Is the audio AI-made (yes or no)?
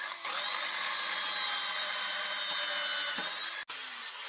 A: no